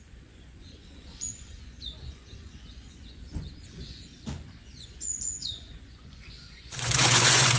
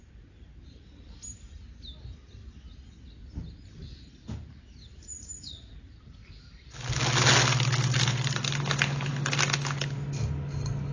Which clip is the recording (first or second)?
second